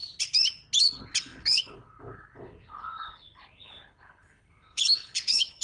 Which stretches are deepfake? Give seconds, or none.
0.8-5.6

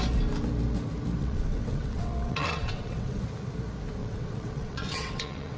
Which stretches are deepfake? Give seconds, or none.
1.2-3.2; 4.0-5.6

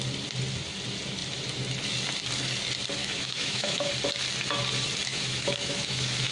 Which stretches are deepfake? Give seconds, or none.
3.0-3.9; 5.1-6.3

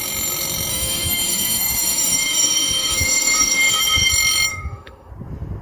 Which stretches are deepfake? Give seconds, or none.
0.7-4.1; 4.5-5.1

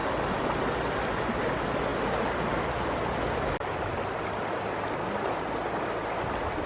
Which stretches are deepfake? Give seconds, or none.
none

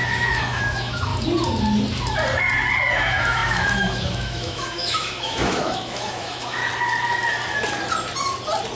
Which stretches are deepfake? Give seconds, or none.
0.0-1.1; 2.9-6.6

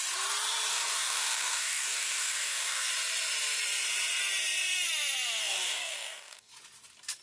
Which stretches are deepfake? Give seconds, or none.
0.7-2.9; 5.4-6.5